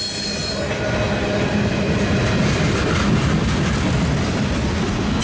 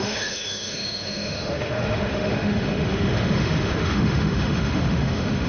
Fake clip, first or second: second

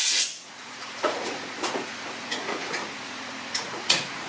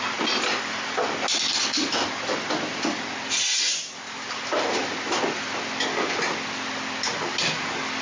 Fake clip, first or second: first